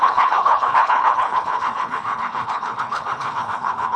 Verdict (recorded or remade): remade